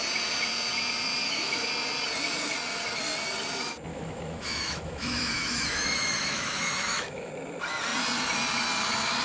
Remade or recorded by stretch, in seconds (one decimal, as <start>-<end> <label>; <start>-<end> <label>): 0.0-1.2 recorded; 1.2-1.7 remade; 1.7-3.9 recorded; 3.9-7.3 remade; 7.3-9.2 recorded